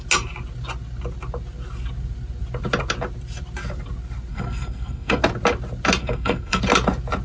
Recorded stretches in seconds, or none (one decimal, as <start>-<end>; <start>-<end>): 0.0-4.3; 5.2-6.0; 6.6-7.2